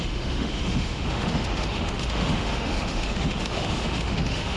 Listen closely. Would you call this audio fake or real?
fake